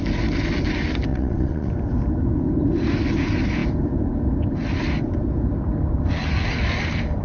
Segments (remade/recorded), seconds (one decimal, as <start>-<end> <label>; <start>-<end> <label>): 0.0-1.1 recorded; 1.1-1.7 remade; 1.7-7.2 recorded